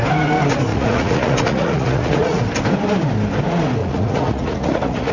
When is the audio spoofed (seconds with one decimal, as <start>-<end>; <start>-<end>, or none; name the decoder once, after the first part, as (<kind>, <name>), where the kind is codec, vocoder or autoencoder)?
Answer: 0.7-2.4 (vocoder, Vocos); 3.8-5.1